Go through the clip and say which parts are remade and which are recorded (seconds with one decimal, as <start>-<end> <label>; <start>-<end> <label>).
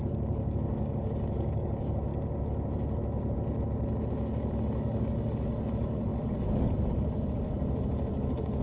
0.0-2.1 remade; 2.1-4.1 recorded; 4.1-8.6 remade